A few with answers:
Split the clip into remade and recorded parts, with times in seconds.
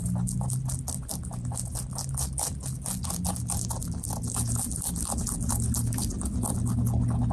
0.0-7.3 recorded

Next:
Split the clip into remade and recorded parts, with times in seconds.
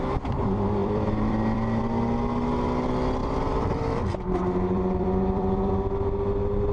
0.0-0.8 recorded; 0.8-1.8 remade; 1.8-3.2 recorded; 3.2-5.7 remade; 5.7-6.7 recorded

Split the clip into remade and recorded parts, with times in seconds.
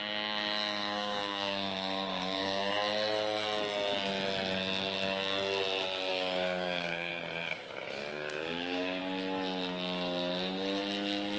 0.0-0.8 recorded; 0.8-2.7 remade; 2.7-6.1 recorded; 6.1-7.1 remade; 7.1-8.1 recorded; 8.1-9.0 remade; 9.0-11.4 recorded